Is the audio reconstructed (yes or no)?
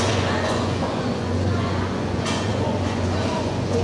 yes